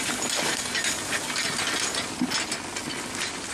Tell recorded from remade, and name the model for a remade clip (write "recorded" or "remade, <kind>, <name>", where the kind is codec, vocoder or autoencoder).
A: recorded